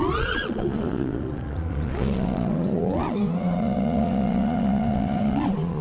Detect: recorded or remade remade